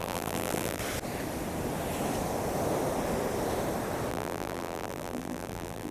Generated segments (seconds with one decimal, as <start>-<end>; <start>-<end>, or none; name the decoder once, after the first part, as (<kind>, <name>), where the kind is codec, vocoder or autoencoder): 0.0-0.8 (vocoder, BigVGAN v2); 4.1-5.9